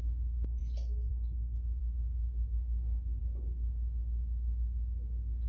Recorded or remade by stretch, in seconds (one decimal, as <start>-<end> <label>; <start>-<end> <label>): 0.0-1.8 recorded; 1.8-3.2 remade; 3.2-5.5 recorded